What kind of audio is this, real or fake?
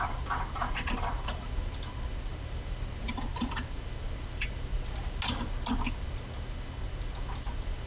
real